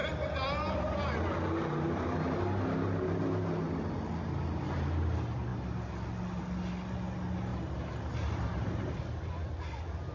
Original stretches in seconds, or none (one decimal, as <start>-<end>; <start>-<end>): 0.0-7.5; 9.0-10.1

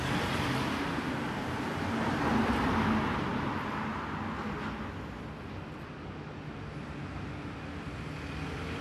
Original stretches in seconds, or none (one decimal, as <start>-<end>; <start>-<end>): 0.0-8.8

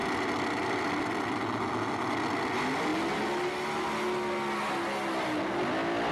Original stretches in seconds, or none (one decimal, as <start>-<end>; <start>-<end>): 1.4-6.1

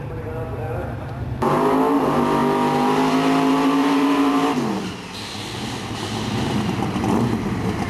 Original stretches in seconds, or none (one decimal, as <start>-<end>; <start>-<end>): 2.4-3.5

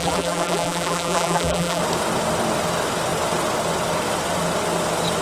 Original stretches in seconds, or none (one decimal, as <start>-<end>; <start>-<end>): 1.8-5.2

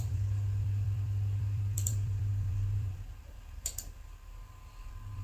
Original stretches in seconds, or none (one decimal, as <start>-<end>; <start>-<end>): none

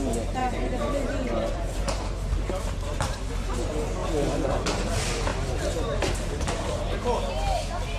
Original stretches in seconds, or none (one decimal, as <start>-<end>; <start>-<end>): 0.0-0.4; 3.3-5.3; 6.9-8.0